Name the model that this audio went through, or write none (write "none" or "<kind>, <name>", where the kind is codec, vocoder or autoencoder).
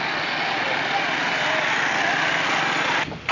none